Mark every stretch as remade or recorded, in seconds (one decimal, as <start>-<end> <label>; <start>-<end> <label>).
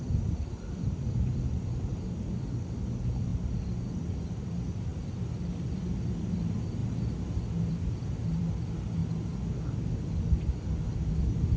0.0-3.3 remade; 3.3-3.9 recorded; 3.9-6.8 remade; 6.8-7.7 recorded; 7.7-9.0 remade; 9.0-11.1 recorded; 11.1-11.6 remade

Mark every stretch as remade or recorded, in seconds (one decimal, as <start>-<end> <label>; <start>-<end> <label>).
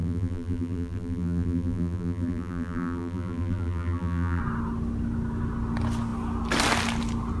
0.0-4.4 remade; 4.4-7.4 recorded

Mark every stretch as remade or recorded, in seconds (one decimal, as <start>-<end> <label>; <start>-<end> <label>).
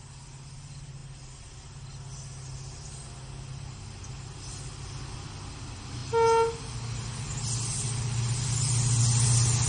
0.0-9.7 recorded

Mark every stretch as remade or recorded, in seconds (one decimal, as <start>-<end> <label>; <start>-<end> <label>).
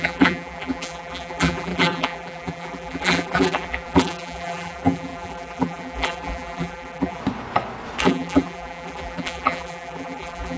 0.0-7.2 remade; 7.2-8.0 recorded; 8.0-10.6 remade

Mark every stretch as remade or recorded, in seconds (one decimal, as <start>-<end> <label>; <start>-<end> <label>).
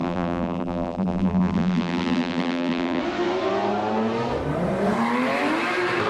0.0-3.0 remade; 3.0-6.1 recorded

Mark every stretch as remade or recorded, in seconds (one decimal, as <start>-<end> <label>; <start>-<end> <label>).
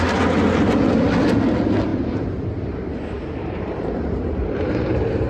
0.0-1.9 recorded; 1.9-5.3 remade